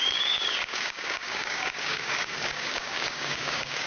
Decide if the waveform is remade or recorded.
remade